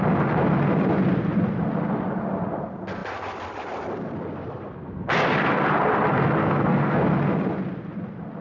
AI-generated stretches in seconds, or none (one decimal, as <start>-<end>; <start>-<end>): 6.4-7.0